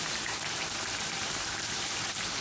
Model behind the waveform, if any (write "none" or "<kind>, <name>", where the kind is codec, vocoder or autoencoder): vocoder, BigVGAN v2